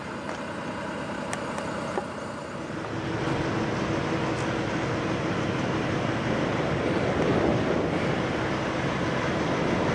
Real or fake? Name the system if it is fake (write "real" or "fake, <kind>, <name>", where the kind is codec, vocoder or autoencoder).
real